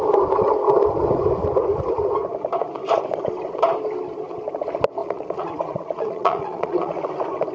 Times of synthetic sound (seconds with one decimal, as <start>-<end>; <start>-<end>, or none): 5.0-7.1